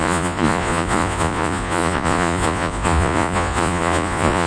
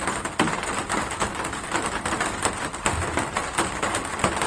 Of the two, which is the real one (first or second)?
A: second